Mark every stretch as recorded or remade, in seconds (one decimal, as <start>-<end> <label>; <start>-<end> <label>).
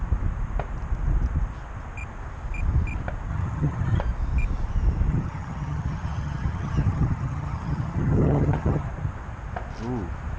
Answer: 0.0-3.3 recorded; 3.3-4.0 remade; 4.0-5.1 recorded; 5.1-8.9 remade; 8.9-10.4 recorded